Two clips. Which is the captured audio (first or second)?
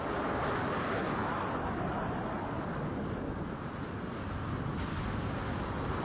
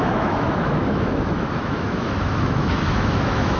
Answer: first